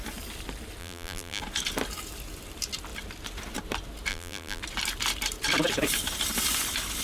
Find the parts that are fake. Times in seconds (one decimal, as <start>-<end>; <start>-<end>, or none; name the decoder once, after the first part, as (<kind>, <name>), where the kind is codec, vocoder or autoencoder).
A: 0.8-1.4 (vocoder, BigVGAN v2); 4.1-4.6